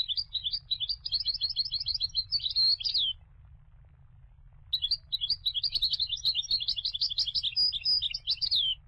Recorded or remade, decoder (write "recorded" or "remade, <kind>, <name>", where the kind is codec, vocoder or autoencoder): recorded